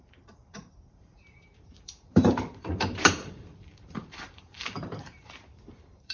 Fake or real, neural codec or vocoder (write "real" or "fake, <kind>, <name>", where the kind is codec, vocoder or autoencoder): fake, vocoder, BigVGAN v2